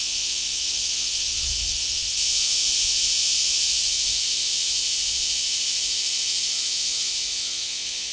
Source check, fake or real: fake